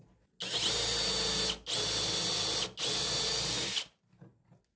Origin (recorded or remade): recorded